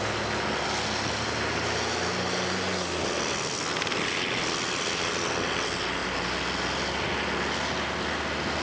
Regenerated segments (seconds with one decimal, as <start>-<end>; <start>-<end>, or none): none